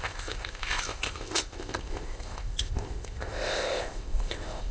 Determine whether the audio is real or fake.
fake